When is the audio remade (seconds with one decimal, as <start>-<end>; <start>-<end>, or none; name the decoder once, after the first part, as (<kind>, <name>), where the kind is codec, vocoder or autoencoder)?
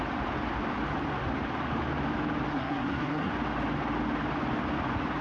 2.5-3.3 (codec, SNAC)